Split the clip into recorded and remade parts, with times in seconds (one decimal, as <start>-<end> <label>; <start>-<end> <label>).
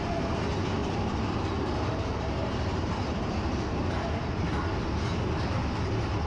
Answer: 0.0-0.8 recorded; 0.8-4.6 remade; 4.6-6.3 recorded